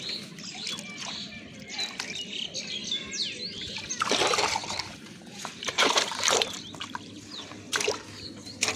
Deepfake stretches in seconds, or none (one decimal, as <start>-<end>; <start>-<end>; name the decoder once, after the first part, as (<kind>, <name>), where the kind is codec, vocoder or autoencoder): 4.6-6.6 (vocoder, BigVGAN v2)